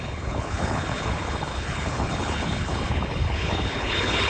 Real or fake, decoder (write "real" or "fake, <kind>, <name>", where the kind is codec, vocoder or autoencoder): fake, codec, HILCodec